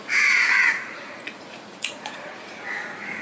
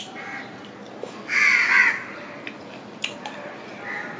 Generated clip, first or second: first